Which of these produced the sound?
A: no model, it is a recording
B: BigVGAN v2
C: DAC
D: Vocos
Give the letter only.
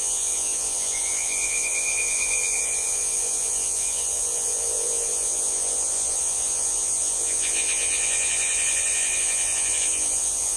D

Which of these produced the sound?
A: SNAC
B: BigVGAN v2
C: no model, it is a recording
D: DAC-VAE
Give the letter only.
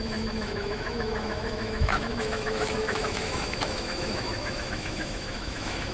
D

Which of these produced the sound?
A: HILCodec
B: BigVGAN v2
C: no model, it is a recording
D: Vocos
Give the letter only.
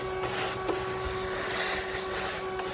C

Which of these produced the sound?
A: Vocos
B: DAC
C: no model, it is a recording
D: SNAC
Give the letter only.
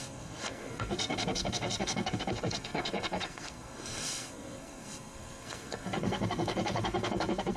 D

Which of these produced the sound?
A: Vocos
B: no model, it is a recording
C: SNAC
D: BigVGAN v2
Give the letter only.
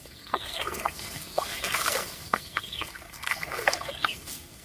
C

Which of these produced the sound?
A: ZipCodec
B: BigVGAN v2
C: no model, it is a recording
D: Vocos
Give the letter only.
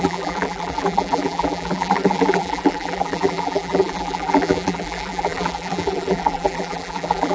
B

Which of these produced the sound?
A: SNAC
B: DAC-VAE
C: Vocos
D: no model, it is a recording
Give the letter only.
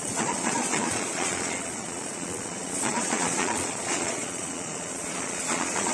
C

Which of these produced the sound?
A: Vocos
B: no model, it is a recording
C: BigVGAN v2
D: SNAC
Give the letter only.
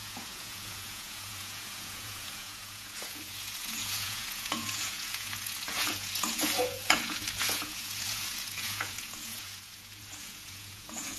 A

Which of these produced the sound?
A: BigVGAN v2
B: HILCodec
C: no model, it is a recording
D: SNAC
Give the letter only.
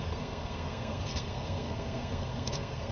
D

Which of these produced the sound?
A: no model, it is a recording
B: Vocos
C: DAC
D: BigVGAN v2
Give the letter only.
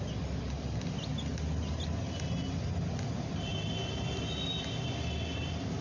A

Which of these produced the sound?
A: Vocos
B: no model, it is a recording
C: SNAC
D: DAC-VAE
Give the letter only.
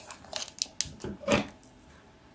B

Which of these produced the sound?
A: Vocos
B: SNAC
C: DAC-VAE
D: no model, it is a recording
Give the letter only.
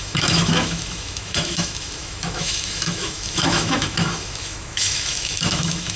C